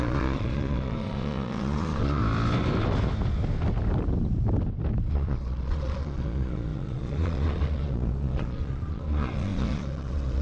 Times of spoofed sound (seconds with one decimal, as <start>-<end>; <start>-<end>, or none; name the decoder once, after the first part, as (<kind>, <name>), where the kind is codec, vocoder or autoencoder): 0.0-2.2 (vocoder, Vocos); 5.1-10.4